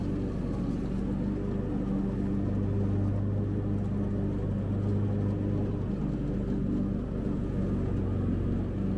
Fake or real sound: real